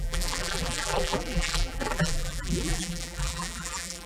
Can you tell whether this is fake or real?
fake